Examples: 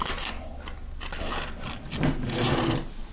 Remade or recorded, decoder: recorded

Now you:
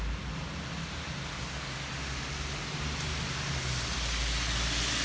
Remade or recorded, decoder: recorded